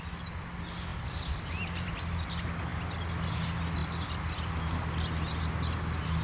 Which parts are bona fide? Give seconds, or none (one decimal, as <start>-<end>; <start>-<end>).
0.0-0.9; 1.9-3.8; 4.6-6.2

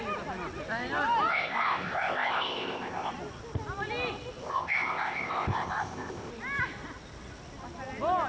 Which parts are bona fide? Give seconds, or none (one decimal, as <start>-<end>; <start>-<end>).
0.0-1.3; 3.1-4.4; 6.3-8.3

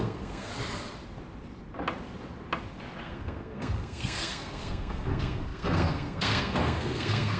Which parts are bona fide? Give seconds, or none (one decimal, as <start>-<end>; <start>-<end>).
0.5-3.0

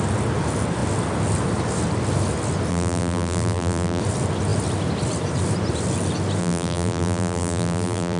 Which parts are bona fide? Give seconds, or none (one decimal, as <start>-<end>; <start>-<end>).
0.0-2.7; 4.0-6.4

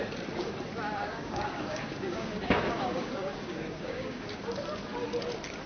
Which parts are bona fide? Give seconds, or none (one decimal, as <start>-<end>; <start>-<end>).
0.0-1.0; 4.4-5.7